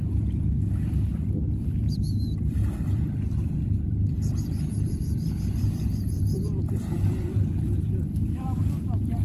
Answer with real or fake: fake